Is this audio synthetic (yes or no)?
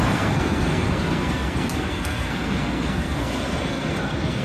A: yes